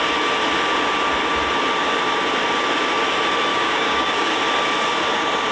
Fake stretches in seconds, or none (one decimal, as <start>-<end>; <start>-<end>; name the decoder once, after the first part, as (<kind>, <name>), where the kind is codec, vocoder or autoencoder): 3.5-4.4 (codec, DAC)